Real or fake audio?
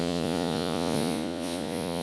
fake